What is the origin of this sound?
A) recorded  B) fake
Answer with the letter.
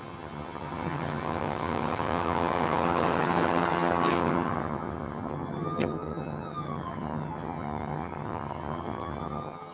B